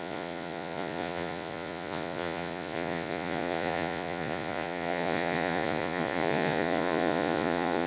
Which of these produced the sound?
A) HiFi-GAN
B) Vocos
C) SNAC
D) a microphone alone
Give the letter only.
B